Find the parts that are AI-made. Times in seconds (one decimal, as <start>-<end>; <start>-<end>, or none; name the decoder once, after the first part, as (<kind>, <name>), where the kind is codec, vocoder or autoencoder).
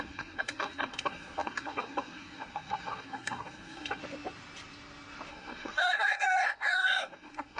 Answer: 0.0-4.0 (codec, SNAC); 5.3-7.6